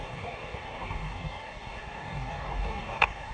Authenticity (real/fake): fake